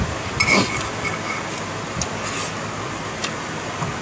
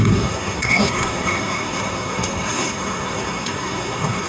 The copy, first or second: second